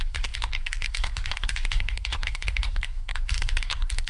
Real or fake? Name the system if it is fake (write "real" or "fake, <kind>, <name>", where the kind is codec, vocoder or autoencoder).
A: fake, codec, SNAC